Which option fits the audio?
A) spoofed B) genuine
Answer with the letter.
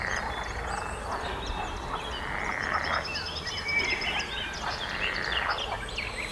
B